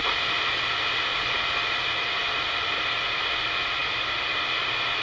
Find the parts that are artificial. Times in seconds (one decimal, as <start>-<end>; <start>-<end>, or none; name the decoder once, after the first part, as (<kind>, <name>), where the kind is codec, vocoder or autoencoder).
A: none